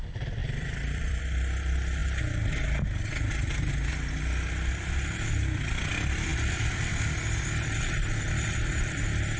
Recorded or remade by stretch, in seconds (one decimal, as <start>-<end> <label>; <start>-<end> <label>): 0.0-0.4 recorded; 0.4-1.2 remade; 1.2-6.3 recorded; 6.3-6.8 remade; 6.8-9.4 recorded